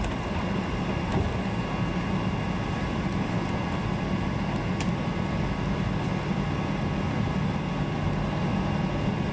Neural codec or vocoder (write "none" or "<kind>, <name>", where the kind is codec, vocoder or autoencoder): none